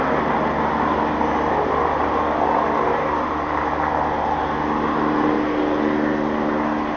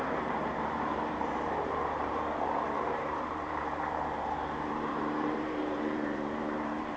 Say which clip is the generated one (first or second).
second